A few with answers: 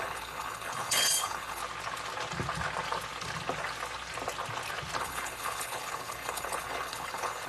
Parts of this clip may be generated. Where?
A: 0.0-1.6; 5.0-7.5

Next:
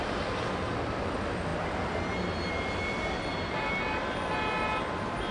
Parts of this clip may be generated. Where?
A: none